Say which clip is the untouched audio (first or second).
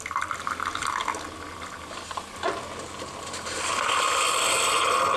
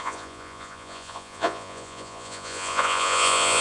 first